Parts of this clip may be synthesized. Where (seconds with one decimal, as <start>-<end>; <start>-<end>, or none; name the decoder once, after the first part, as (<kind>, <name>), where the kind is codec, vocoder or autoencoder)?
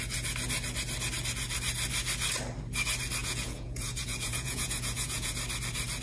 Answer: 3.2-5.3 (vocoder, Vocos)